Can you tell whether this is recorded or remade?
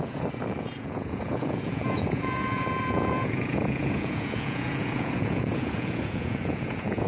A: remade